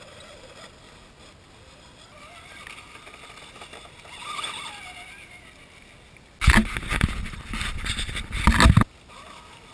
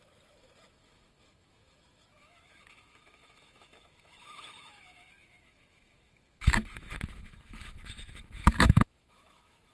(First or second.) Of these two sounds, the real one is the first